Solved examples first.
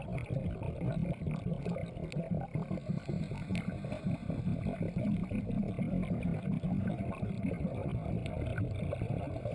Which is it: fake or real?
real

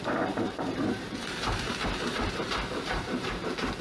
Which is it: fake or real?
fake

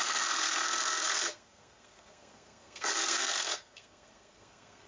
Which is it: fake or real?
fake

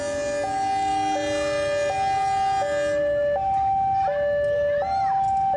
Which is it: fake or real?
real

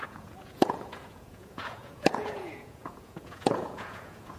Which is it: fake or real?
fake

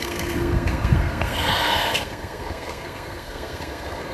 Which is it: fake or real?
fake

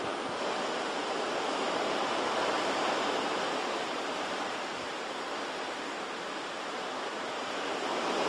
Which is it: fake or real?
fake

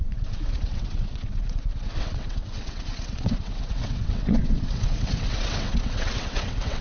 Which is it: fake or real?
fake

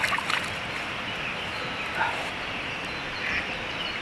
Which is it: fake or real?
real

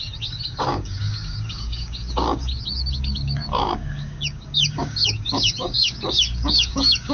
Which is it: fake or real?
fake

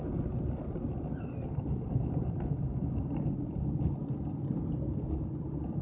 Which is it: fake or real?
real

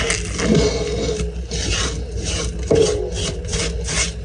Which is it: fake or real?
real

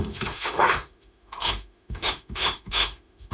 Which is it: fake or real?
fake